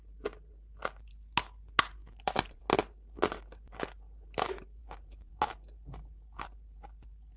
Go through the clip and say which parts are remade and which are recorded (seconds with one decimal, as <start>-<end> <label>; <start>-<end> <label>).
0.0-2.0 recorded; 2.0-2.6 remade; 2.6-4.8 recorded; 4.8-5.3 remade; 5.3-7.4 recorded